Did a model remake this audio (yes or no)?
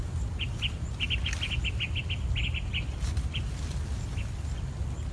no